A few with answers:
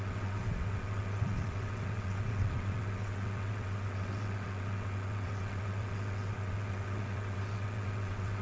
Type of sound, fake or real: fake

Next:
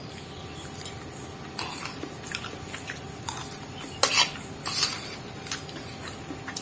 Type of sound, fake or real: real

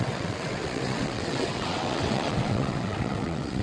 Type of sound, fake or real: fake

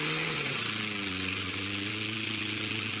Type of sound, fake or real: fake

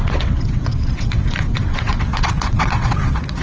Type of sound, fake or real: fake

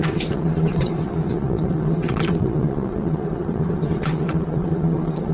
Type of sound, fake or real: fake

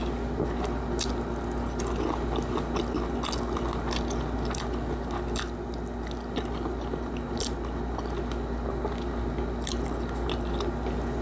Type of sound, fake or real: real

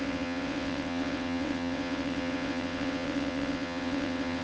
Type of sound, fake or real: fake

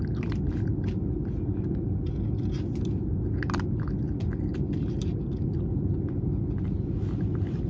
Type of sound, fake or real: real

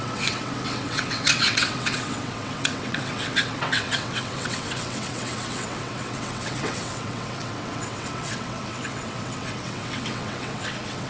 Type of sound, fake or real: fake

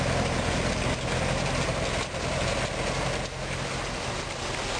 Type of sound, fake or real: real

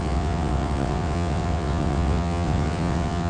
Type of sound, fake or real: fake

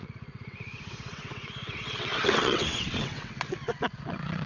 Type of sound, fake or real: fake